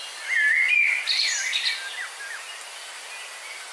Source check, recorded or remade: recorded